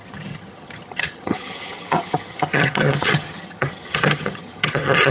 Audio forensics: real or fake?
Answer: fake